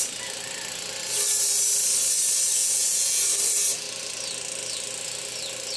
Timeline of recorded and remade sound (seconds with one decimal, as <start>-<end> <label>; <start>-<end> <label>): 0.0-2.6 recorded; 2.6-3.2 remade; 3.2-5.8 recorded